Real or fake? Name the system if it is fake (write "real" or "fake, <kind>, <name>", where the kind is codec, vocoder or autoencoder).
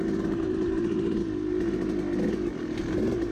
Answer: real